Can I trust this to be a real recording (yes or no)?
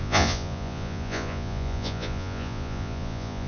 no